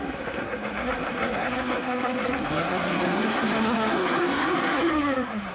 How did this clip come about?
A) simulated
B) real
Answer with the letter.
A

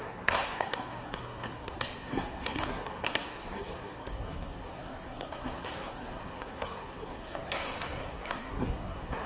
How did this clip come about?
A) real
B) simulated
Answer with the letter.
B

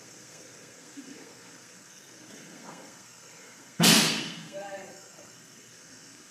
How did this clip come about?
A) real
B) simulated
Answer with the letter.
B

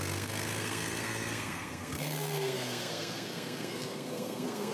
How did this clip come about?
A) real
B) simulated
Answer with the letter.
B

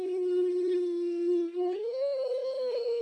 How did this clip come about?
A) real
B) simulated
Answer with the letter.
B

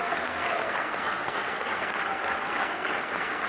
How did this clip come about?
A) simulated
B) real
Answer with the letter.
A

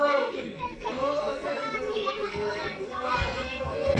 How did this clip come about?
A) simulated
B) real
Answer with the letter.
A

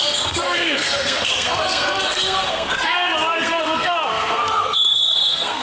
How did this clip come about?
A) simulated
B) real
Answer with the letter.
A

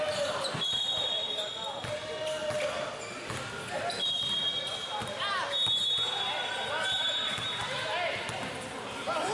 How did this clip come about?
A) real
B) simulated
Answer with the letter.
A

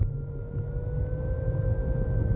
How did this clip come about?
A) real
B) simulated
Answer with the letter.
A